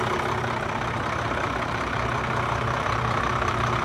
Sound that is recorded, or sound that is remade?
remade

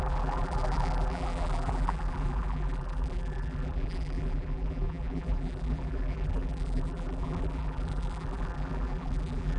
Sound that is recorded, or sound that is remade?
remade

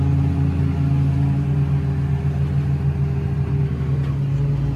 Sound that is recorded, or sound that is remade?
recorded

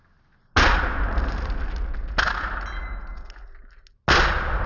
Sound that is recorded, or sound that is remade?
recorded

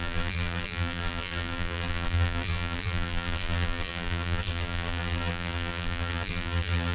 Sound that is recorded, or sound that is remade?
remade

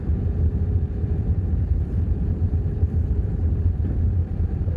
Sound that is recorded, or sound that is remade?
remade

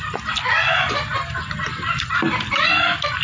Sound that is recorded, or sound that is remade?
remade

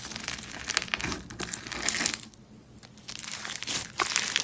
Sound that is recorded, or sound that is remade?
recorded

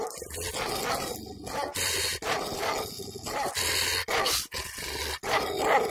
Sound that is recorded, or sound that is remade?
recorded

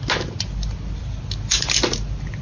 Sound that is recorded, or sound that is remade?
recorded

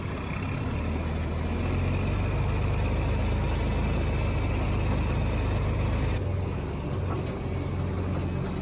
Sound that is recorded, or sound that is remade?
recorded